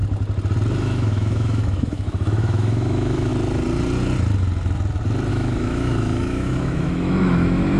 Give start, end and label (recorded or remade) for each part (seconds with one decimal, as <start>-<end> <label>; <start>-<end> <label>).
0.0-0.8 recorded; 0.8-3.3 remade; 3.3-5.3 recorded; 5.3-7.8 remade